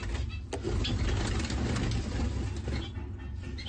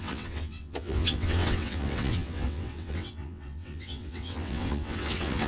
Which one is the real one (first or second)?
first